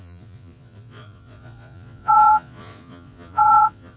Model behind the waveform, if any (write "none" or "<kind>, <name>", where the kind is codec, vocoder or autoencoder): vocoder, Vocos